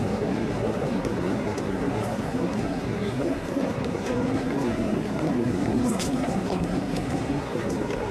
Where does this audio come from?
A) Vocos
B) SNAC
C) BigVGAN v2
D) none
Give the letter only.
B